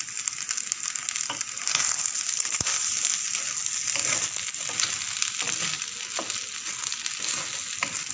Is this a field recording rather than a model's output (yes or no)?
yes